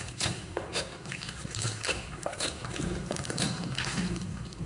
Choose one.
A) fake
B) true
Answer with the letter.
A